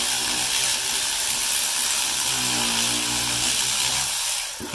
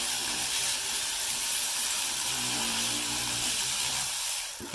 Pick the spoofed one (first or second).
second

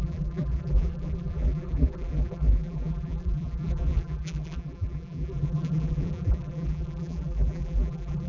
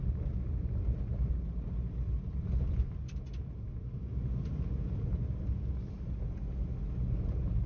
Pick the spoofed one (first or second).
first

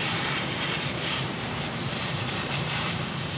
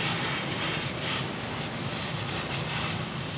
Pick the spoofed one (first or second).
first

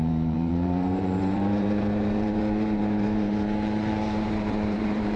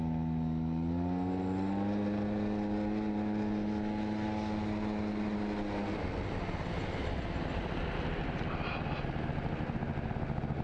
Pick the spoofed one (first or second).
first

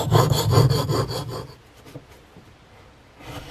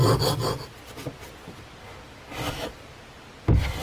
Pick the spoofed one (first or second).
first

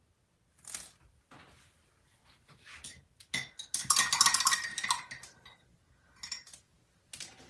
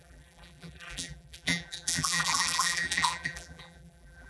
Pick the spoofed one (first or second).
second